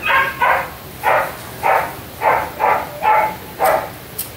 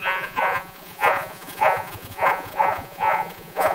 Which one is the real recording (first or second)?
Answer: first